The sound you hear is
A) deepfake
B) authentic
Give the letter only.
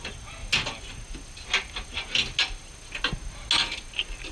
B